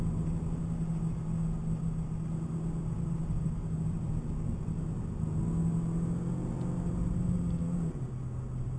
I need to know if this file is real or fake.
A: real